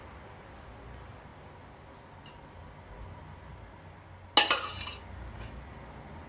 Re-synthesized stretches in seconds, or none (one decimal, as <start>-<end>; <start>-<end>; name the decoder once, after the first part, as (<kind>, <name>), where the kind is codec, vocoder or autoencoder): none